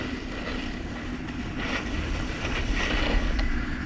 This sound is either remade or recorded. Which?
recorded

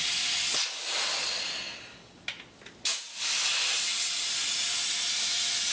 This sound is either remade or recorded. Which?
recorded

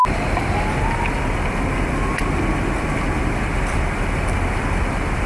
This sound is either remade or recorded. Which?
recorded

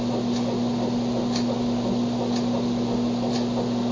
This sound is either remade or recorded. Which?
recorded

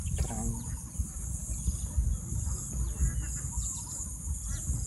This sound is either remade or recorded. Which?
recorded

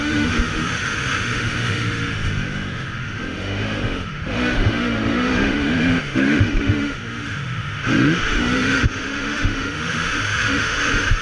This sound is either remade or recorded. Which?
remade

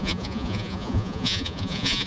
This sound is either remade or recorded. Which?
remade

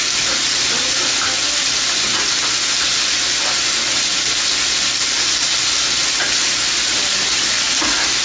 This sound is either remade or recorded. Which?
recorded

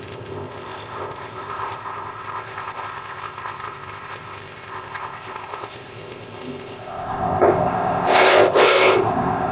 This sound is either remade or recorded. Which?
remade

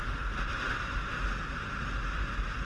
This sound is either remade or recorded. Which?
recorded